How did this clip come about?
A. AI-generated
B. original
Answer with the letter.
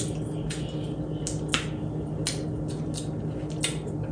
B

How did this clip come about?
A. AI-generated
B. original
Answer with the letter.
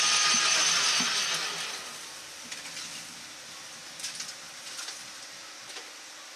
B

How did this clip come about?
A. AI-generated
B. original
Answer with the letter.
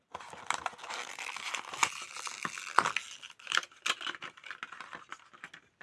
B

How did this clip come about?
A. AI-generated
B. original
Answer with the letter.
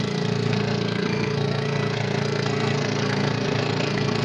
A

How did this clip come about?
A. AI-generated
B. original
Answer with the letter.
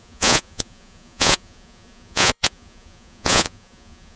A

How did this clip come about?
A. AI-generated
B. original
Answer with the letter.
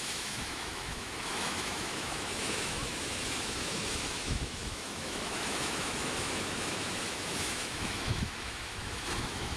A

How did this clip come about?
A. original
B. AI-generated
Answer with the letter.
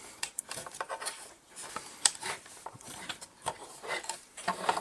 B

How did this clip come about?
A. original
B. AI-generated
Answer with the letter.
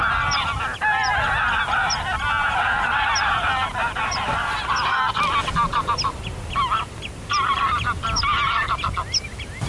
A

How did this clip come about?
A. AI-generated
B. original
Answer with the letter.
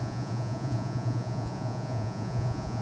A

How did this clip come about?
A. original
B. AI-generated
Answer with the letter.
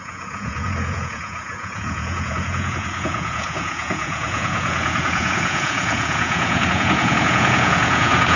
B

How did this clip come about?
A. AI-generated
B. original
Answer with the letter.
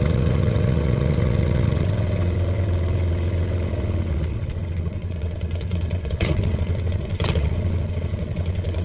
A